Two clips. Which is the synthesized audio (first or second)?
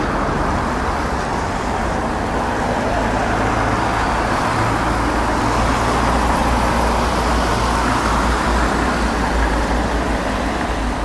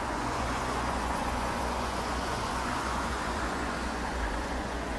second